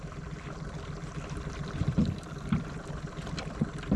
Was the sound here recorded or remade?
recorded